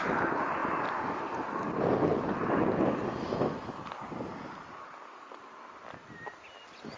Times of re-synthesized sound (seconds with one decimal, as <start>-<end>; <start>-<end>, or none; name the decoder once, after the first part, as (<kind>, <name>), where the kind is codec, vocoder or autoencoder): none